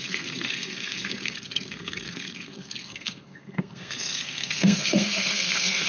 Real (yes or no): no